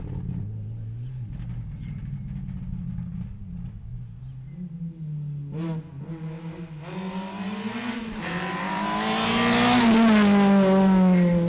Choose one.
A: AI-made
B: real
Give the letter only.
B